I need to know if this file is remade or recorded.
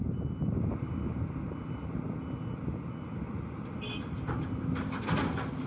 recorded